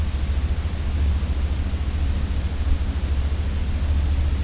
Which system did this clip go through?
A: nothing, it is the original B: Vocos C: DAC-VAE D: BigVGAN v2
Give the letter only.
A